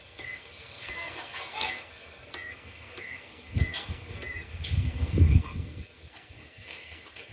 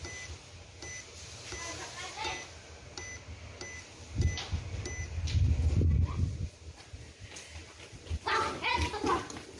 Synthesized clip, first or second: first